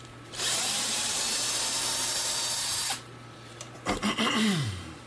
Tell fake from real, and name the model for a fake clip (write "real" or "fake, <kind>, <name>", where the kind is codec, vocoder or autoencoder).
fake, vocoder, BigVGAN v2